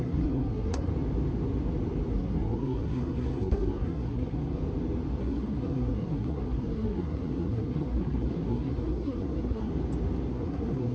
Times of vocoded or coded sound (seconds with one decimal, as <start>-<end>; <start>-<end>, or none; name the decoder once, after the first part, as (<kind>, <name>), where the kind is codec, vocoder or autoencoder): 0.0-0.9 (codec, SNAC); 2.1-4.6; 5.2-9.7; 10.3-10.9